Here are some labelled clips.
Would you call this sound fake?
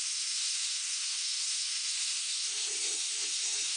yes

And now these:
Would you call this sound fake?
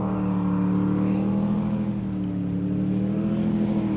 no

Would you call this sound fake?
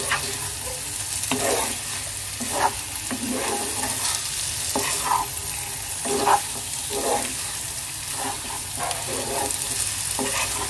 no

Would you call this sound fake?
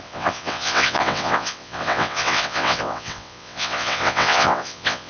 yes